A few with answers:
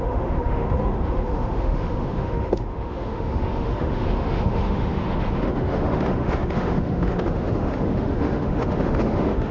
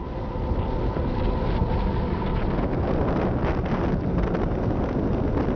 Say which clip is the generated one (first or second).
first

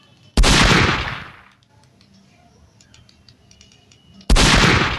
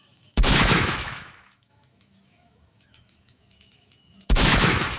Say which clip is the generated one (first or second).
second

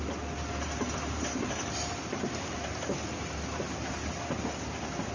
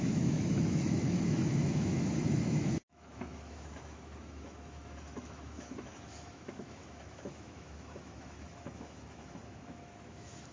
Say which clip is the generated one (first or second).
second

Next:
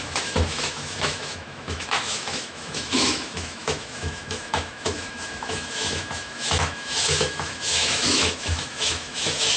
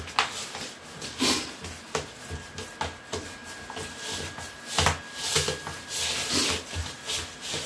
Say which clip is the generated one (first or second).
first